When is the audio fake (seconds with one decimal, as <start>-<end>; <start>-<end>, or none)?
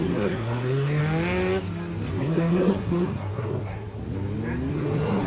0.0-1.0; 2.1-4.0; 4.7-5.3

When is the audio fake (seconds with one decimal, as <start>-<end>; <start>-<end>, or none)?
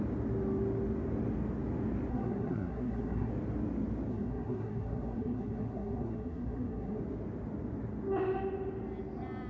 2.1-3.3; 4.1-7.0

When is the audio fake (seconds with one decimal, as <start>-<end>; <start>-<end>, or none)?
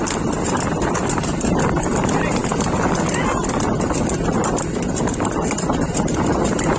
none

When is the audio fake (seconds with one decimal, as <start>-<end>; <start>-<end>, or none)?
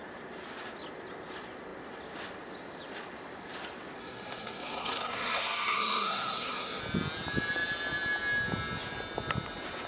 4.0-6.8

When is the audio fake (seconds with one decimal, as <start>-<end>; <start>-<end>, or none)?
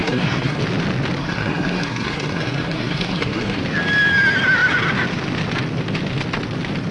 0.0-0.6; 1.2-3.6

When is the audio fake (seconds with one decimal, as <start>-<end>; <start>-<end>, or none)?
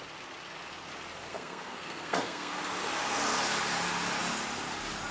1.3-2.6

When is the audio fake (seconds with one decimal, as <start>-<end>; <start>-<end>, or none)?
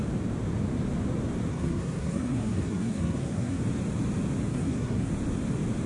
1.5-3.6; 4.5-5.1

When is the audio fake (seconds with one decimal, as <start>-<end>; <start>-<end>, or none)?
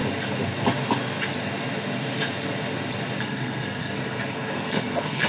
3.2-5.3